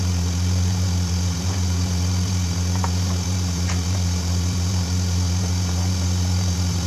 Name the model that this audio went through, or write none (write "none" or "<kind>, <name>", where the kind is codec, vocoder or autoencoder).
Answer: vocoder, BigVGAN v2